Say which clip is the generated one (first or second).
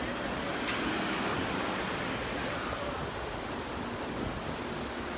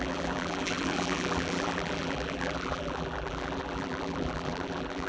second